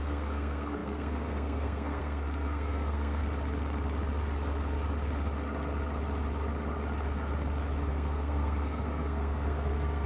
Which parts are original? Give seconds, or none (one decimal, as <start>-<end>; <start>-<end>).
3.2-7.9